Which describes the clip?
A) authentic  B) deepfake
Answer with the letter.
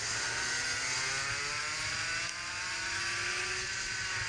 A